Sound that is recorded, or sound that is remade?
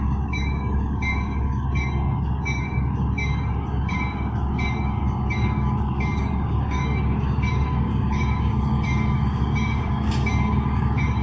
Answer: remade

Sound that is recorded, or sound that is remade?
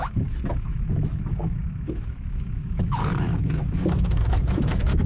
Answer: remade